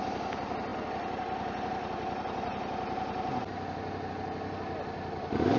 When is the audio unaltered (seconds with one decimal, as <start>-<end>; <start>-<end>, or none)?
0.0-5.6